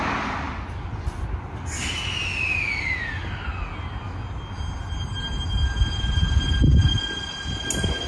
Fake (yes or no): no